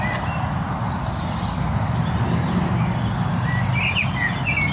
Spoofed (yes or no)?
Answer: no